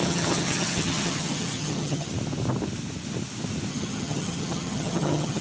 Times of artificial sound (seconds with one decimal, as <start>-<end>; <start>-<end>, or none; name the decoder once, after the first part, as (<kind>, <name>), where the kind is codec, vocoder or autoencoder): 0.0-2.1 (vocoder, HiFi-GAN); 3.7-5.4